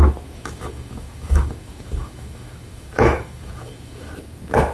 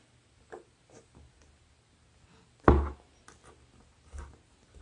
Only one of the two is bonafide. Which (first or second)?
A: second